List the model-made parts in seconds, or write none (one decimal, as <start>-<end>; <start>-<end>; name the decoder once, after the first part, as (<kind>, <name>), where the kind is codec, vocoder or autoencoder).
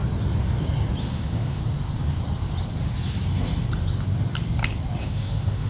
1.0-1.6 (autoencoder, DAC-VAE); 5.0-5.7